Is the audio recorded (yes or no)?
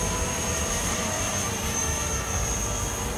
no